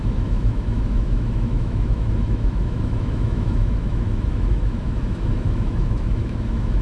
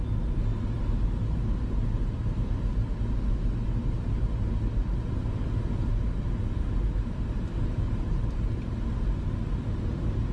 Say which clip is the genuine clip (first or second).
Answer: second